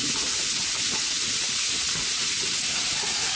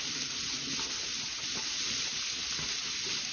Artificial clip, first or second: first